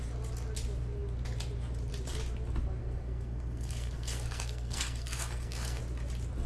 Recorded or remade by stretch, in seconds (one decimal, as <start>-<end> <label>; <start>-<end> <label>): 0.0-2.8 recorded; 2.8-5.8 remade; 5.8-6.5 recorded